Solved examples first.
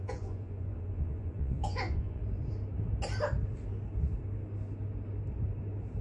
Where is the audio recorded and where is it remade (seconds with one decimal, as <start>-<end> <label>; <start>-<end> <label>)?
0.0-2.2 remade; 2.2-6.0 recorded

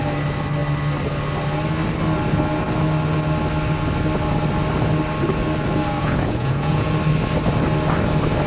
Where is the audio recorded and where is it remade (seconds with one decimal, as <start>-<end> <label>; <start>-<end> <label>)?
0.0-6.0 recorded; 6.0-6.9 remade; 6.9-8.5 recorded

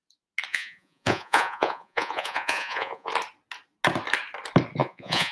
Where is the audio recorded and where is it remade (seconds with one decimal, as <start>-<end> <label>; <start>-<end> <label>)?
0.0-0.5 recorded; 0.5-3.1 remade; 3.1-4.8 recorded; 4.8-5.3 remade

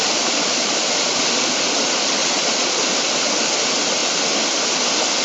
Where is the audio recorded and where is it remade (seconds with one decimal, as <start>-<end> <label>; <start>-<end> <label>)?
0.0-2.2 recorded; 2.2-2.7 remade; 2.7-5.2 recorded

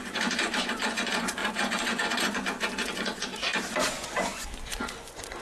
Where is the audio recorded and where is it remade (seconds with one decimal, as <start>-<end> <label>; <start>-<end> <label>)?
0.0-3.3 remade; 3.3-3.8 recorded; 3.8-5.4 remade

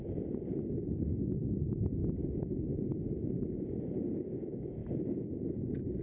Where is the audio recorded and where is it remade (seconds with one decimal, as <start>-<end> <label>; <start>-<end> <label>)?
0.0-6.0 recorded

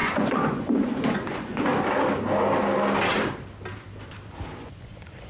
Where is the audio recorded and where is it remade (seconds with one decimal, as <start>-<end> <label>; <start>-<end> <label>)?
0.0-1.7 remade; 1.7-4.6 recorded; 4.6-5.3 remade